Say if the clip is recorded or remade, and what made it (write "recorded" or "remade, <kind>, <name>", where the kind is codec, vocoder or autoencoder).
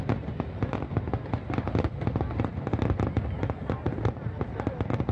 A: recorded